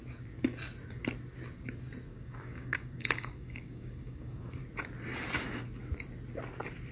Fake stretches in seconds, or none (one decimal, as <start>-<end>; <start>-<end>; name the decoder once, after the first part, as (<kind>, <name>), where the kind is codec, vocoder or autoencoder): 2.1-4.5 (codec, DAC)